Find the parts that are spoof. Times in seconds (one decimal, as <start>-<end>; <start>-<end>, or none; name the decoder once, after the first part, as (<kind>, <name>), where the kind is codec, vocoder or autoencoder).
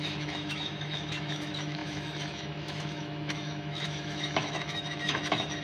0.0-5.6 (autoencoder, DAC-VAE)